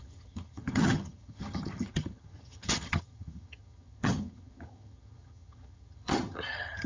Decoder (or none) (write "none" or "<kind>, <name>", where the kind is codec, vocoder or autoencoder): vocoder, HiFi-GAN